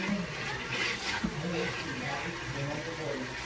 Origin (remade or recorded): recorded